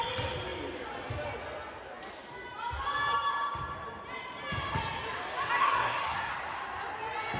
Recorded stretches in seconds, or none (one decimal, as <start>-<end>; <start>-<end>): 0.0-5.6; 6.3-7.4